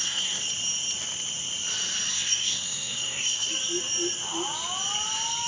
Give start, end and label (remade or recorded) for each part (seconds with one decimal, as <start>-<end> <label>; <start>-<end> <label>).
0.0-0.4 remade; 0.4-2.1 recorded; 2.1-3.5 remade; 3.5-5.5 recorded